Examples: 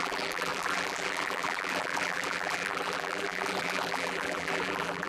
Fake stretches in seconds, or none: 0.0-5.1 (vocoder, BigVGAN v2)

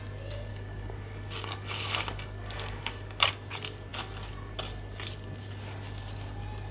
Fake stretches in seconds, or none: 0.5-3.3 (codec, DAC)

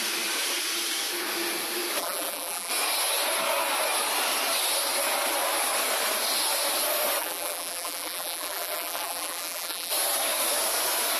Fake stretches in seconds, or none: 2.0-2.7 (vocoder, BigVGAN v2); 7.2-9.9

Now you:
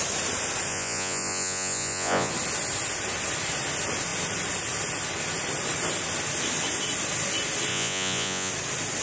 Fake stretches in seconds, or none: 0.7-2.3 (vocoder, Vocos); 7.7-8.5